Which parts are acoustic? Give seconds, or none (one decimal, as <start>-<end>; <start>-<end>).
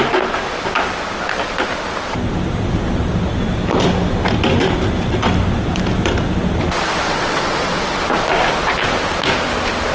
0.0-7.1; 8.0-9.9